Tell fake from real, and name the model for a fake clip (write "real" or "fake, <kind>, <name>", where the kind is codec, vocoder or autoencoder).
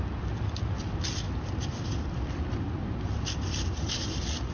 real